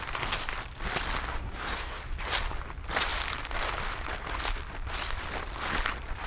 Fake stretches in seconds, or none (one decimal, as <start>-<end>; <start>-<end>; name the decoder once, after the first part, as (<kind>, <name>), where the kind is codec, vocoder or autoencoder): 1.3-2.0 (codec, SNAC)